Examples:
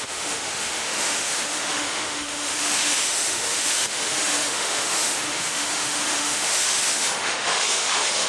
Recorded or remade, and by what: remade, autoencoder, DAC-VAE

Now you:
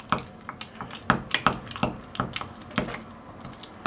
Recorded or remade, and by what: recorded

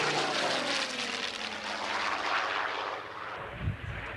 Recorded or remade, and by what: recorded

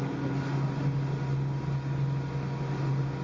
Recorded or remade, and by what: recorded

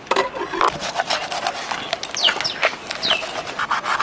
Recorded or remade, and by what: recorded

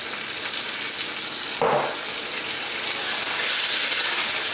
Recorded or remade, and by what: recorded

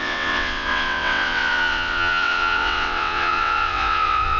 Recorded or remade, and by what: remade, vocoder, WaveNeXt